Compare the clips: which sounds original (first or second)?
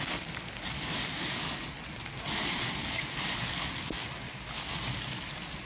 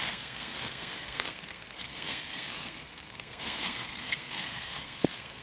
first